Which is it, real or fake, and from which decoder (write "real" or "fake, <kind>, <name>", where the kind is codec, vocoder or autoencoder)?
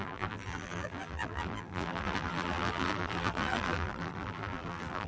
fake, vocoder, BigVGAN v2